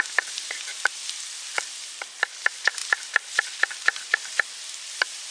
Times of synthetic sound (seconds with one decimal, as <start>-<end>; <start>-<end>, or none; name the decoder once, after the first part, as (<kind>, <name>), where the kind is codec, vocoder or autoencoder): 2.8-4.5 (vocoder, BigVGAN v2)